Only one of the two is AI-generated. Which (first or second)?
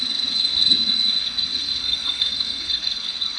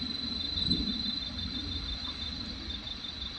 first